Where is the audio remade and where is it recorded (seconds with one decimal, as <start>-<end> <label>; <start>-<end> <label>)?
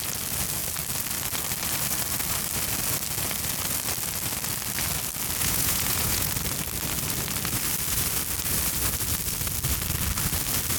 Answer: 0.0-5.4 recorded; 5.4-6.3 remade; 6.3-10.8 recorded